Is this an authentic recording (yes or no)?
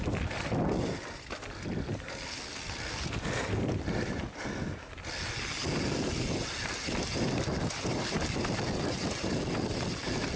yes